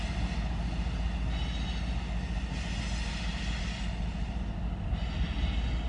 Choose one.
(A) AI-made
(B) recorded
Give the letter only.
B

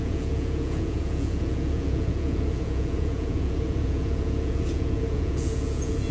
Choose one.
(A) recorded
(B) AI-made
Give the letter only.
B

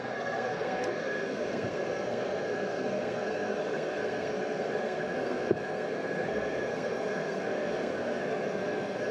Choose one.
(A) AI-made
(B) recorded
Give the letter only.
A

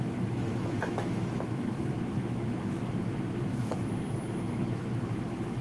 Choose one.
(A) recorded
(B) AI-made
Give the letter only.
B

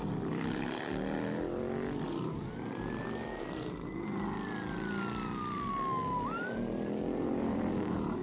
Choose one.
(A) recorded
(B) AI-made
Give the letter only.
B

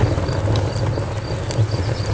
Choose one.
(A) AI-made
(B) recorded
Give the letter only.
B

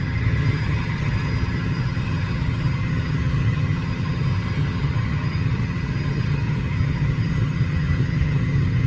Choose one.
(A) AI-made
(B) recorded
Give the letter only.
A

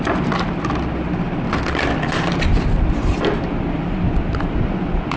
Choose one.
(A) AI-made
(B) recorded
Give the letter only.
A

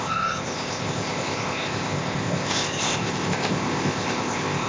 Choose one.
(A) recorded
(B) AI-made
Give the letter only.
B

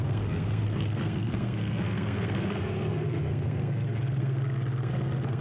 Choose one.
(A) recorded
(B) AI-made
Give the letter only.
B